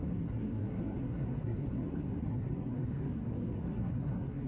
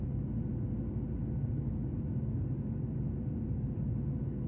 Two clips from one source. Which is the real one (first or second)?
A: second